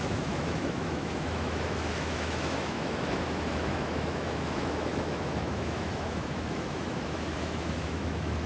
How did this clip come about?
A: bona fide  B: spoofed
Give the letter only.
B